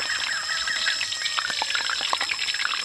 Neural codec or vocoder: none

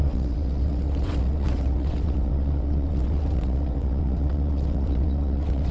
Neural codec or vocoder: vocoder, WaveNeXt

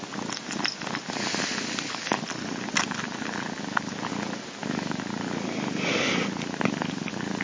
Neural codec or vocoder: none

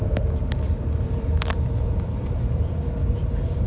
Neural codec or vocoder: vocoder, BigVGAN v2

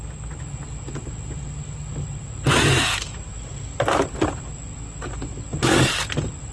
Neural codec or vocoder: none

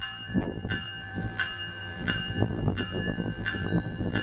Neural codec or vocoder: vocoder, BigVGAN v2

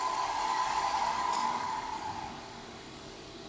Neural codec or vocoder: codec, DAC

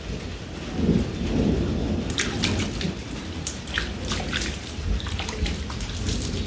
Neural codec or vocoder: none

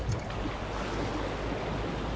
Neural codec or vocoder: none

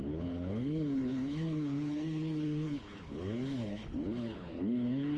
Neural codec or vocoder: codec, HILCodec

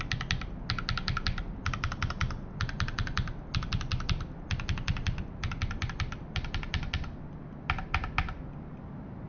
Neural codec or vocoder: none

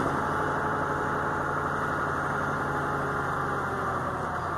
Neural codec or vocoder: none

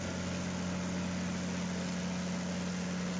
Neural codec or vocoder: none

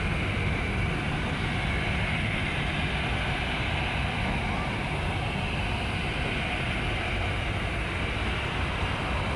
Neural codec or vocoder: none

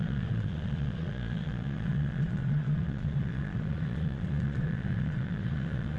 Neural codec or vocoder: vocoder, Vocos